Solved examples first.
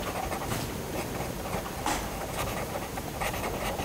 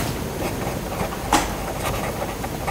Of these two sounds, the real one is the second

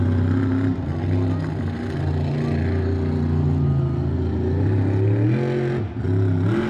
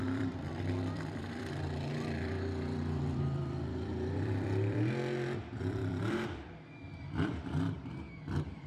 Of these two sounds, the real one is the first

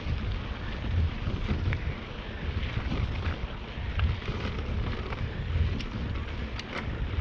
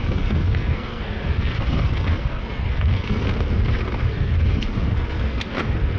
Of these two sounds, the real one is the first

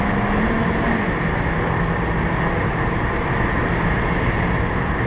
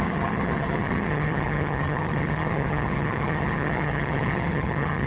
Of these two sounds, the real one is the first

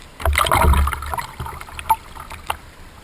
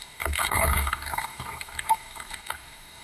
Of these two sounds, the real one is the first